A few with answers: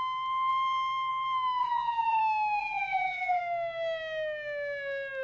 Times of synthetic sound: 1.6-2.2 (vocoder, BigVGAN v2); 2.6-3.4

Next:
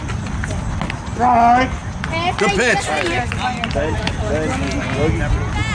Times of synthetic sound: none

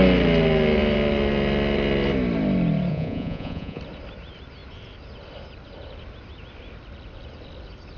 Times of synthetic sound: 2.9-3.8 (vocoder, Vocos)

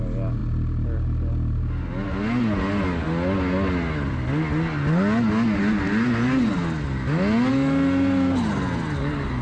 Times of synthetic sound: none

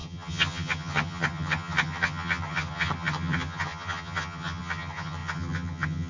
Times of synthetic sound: 0.0-6.1 (vocoder, HiFi-GAN)

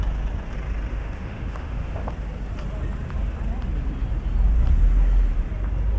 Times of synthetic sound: 0.9-2.1 (autoencoder, DAC-VAE)

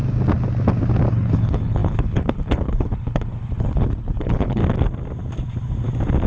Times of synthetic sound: 1.1-4.6 (codec, HILCodec)